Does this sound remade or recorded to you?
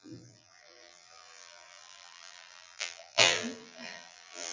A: remade